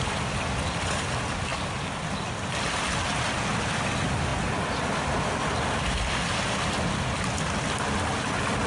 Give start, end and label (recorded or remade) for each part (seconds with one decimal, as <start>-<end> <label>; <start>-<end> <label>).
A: 0.0-8.7 recorded